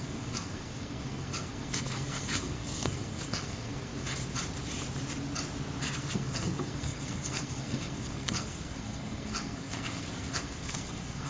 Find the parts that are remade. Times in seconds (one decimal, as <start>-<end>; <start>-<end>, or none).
0.0-3.9; 5.8-11.3